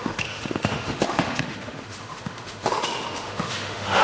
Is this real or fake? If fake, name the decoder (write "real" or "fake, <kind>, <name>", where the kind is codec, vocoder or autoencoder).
fake, autoencoder, DAC-VAE